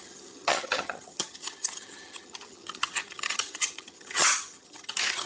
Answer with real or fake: fake